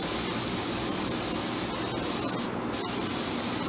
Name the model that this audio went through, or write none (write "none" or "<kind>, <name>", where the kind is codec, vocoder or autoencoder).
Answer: none